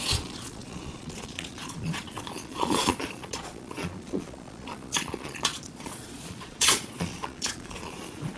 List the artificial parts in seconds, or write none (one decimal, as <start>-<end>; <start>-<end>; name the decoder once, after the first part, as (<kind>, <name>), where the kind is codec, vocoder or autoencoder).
0.0-8.4 (vocoder, Vocos)